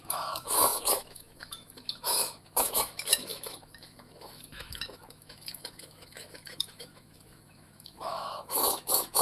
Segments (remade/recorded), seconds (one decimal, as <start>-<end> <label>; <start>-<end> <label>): 0.0-9.2 remade